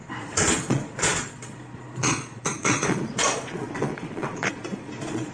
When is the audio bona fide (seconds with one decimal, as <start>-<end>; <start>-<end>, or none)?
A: none